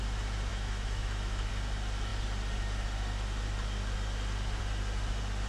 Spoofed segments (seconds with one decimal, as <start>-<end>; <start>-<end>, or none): 0.5-1.5